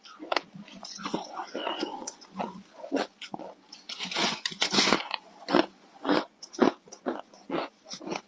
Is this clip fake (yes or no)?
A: yes